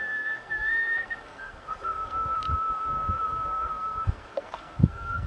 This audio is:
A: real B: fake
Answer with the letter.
B